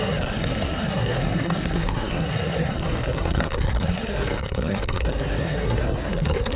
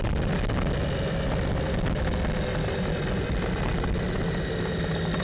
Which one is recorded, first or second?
second